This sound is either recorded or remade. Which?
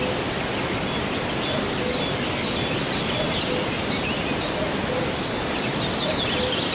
recorded